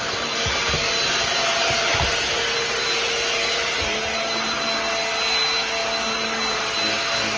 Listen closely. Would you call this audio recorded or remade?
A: recorded